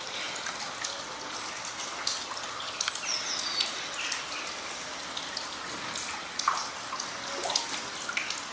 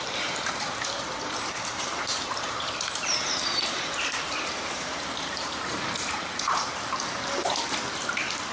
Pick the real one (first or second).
first